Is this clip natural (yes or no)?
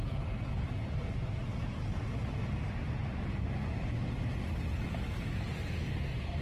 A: yes